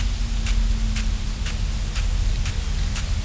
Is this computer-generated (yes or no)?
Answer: no